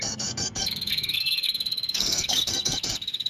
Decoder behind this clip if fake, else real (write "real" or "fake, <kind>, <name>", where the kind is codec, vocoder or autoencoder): fake, codec, SNAC